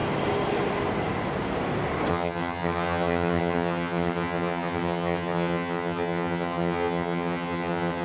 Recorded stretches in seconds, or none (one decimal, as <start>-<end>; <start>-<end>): 0.0-2.1